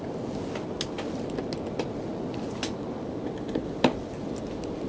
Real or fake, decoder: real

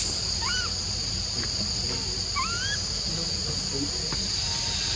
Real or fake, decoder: real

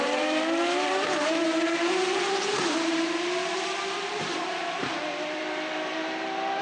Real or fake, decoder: fake, vocoder, BigVGAN v2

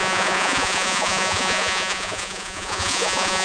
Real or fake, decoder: fake, vocoder, Vocos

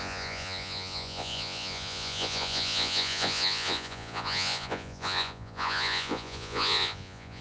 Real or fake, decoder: fake, vocoder, Vocos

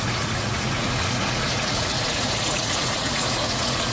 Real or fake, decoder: fake, vocoder, Vocos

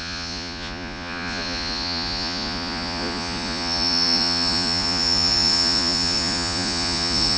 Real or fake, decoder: fake, vocoder, Vocos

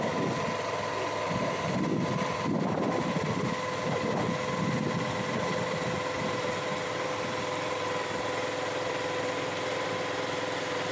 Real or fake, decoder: real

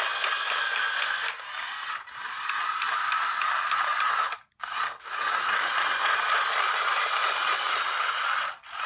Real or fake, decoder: real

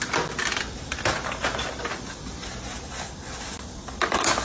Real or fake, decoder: real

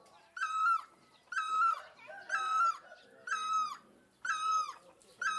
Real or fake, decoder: real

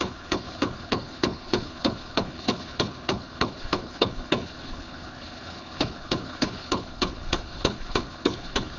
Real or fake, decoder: fake, codec, HILCodec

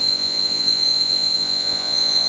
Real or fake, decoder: fake, vocoder, Vocos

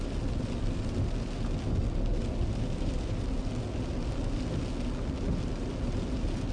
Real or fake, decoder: real